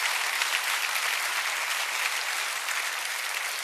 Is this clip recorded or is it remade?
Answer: recorded